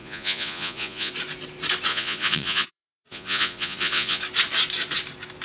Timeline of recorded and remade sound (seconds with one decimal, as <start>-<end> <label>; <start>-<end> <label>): 0.0-1.1 remade; 1.1-1.9 recorded; 1.9-4.2 remade; 4.2-5.4 recorded

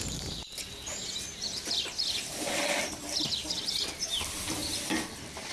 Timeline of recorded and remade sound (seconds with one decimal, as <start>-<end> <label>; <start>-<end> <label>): 0.0-1.0 remade; 1.0-2.3 recorded; 2.3-4.6 remade; 4.6-5.5 recorded

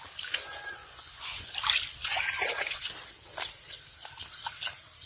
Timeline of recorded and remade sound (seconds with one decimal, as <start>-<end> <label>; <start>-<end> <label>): 0.0-0.4 recorded; 0.4-1.5 remade; 1.5-2.0 recorded; 2.0-2.9 remade; 2.9-5.1 recorded

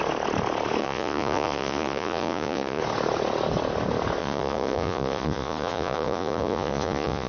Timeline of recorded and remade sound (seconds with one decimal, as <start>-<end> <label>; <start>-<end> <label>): 0.0-0.8 recorded; 0.8-2.8 remade; 2.8-4.2 recorded; 4.2-7.3 remade

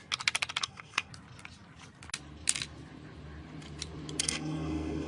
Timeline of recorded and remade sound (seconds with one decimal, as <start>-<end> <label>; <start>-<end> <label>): 0.0-0.6 recorded; 0.6-1.1 remade; 1.1-4.2 recorded; 4.2-5.1 remade

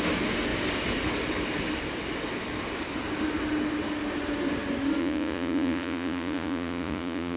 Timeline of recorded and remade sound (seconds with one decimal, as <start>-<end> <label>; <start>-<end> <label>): 0.0-5.0 recorded; 5.0-7.4 remade